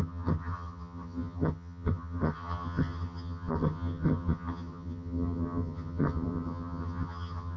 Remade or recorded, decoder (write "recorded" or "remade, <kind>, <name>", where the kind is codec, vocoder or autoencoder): remade, vocoder, HiFi-GAN